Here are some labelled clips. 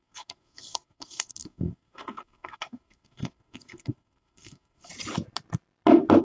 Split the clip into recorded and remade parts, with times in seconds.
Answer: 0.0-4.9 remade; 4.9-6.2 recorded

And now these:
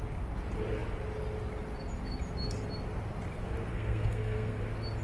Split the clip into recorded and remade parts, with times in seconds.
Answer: 0.0-3.7 recorded; 3.7-4.6 remade; 4.6-5.0 recorded

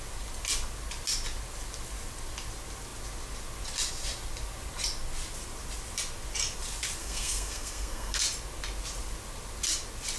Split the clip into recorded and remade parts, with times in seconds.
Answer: 0.0-7.0 recorded; 7.0-8.2 remade; 8.2-10.2 recorded